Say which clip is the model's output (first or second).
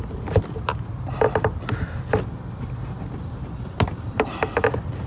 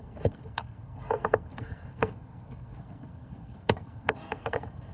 second